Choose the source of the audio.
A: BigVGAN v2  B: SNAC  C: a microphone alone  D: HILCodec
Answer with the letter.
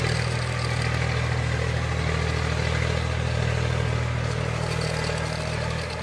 C